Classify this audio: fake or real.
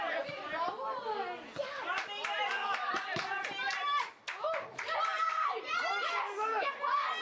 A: real